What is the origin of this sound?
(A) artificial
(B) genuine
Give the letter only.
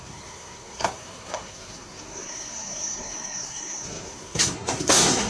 A